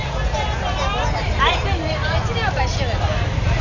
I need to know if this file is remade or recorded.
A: recorded